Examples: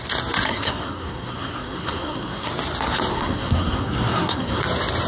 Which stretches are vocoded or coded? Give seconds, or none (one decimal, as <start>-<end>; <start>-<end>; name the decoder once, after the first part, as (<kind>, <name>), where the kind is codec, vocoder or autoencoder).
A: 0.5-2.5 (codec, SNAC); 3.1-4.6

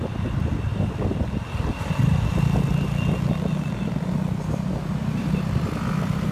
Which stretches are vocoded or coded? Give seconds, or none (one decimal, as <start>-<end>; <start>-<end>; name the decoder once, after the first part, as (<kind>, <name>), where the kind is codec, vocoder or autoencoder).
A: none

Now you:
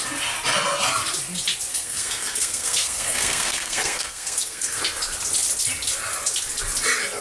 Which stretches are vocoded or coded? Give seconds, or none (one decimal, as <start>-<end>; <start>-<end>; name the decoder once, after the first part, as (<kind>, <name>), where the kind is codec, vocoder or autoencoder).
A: 1.7-4.8 (codec, SNAC)

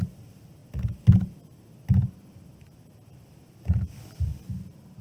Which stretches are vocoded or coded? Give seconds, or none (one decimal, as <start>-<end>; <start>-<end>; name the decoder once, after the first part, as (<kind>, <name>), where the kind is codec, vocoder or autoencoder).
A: 0.0-0.6 (vocoder, BigVGAN v2); 3.6-4.3